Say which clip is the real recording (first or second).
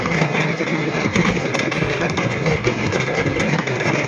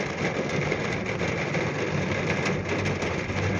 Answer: second